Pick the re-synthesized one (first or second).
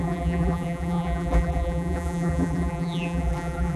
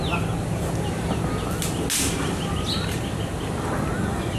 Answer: first